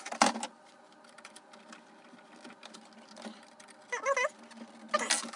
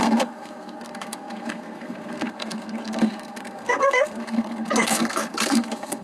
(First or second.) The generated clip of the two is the second